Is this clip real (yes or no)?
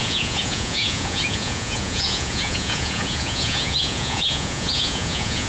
no